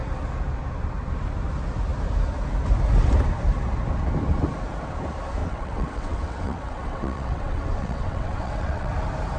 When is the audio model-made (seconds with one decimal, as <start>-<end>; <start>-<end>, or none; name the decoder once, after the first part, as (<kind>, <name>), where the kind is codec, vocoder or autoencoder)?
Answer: 5.4-8.9 (vocoder, WaveNeXt)